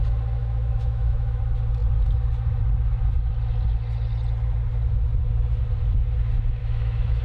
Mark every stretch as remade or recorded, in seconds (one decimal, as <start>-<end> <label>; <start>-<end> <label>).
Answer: 0.0-0.4 recorded; 0.4-1.4 remade; 1.4-6.6 recorded; 6.6-7.2 remade